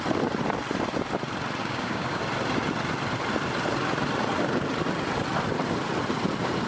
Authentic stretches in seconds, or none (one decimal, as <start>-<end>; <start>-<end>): 0.0-1.6; 2.2-6.7